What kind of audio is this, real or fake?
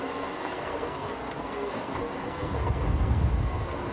fake